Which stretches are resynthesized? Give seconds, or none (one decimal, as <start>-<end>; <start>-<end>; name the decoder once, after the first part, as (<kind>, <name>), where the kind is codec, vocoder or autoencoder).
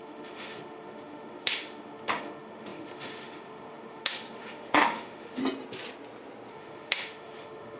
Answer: 0.0-5.4 (autoencoder, DAC-VAE); 6.5-7.8